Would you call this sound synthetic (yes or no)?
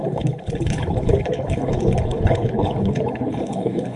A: yes